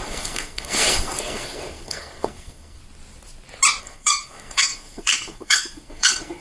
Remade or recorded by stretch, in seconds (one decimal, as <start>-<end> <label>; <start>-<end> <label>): 0.0-2.8 remade; 2.8-3.8 recorded; 3.8-6.4 remade